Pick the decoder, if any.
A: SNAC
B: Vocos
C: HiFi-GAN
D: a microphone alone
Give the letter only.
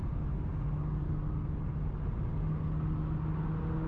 D